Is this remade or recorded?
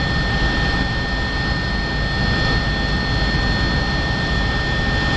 recorded